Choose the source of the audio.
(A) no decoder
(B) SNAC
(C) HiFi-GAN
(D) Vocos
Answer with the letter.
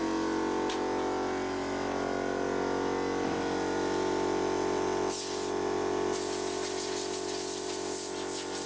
A